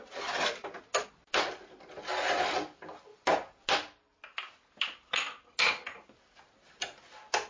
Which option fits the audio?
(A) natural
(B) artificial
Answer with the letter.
A